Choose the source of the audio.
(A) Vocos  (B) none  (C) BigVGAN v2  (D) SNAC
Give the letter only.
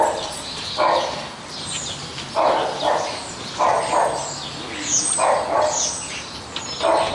B